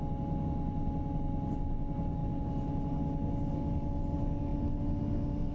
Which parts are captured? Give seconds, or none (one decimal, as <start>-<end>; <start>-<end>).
0.0-5.5

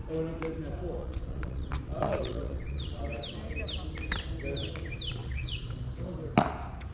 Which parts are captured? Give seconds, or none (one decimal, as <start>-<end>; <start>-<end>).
0.0-1.0; 3.0-5.2; 5.8-6.9

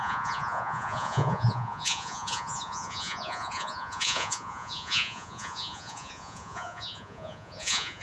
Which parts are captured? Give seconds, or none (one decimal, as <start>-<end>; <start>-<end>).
none

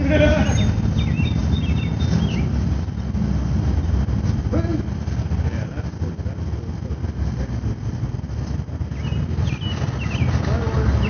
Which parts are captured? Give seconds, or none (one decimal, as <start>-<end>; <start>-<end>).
0.0-11.1

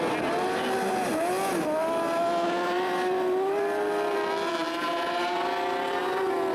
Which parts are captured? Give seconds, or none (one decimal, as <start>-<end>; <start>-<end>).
0.0-6.5